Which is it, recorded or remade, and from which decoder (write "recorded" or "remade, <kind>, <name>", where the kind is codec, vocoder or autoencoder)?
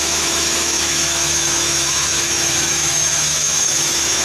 remade, autoencoder, DAC-VAE